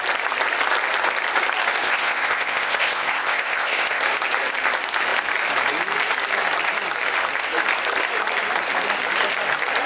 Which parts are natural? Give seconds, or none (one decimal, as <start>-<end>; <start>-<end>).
0.0-1.8; 4.0-9.9